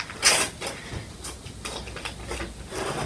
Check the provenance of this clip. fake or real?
real